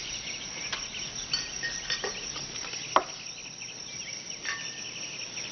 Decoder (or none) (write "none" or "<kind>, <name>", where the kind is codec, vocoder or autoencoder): none